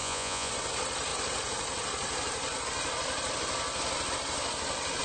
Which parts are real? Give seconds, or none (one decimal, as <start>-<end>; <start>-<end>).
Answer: 0.5-5.0